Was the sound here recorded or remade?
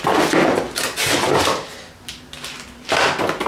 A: recorded